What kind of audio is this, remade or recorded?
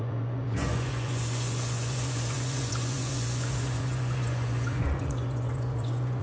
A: remade